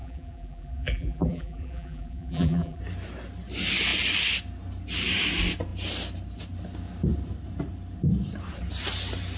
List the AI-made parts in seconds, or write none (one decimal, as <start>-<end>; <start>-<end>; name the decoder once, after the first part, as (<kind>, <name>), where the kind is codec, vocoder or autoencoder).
0.0-2.8 (vocoder, BigVGAN v2)

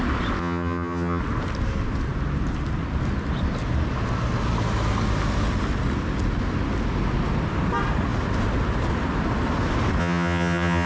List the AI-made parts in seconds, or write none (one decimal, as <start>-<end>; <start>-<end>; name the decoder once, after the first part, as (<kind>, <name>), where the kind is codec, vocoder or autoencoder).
0.4-1.2 (vocoder, HiFi-GAN); 10.0-10.9

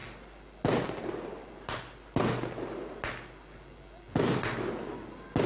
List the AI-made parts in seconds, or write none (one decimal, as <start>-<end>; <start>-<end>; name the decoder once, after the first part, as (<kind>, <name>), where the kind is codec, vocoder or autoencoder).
none

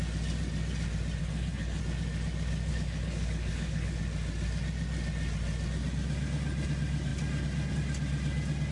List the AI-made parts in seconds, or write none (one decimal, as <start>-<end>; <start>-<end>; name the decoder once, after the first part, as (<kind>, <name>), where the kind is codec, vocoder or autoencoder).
1.2-1.8 (codec, HILCodec); 2.7-4.0

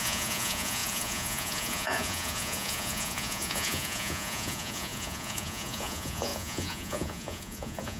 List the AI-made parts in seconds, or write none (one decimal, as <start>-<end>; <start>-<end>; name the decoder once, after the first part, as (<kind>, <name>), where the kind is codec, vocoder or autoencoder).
0.0-8.0 (vocoder, Vocos)

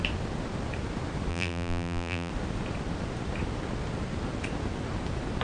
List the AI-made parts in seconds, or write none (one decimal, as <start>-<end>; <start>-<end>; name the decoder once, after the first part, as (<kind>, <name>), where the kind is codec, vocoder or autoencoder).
1.3-2.3 (vocoder, BigVGAN v2)